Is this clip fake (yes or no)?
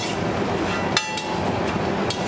no